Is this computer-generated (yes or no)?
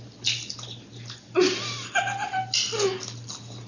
no